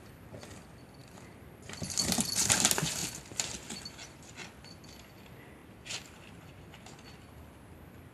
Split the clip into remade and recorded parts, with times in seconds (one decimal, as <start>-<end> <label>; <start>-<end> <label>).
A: 0.0-1.0 recorded; 1.0-2.3 remade; 2.3-3.0 recorded; 3.0-4.7 remade; 4.7-8.1 recorded